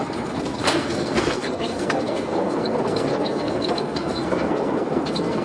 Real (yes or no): no